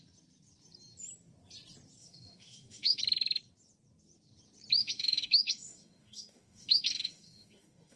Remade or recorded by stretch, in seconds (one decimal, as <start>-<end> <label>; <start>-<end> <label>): 0.0-2.0 recorded; 2.0-3.0 remade; 3.0-4.8 recorded; 4.8-8.0 remade